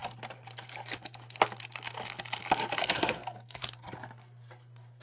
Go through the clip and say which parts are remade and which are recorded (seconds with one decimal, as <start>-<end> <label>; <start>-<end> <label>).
0.0-2.8 recorded; 2.8-3.6 remade; 3.6-5.0 recorded